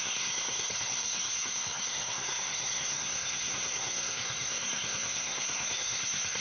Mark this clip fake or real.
fake